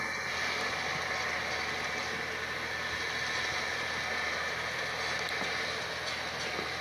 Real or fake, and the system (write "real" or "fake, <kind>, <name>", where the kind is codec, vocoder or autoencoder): real